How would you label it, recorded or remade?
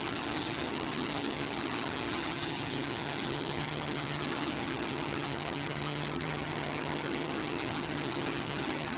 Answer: remade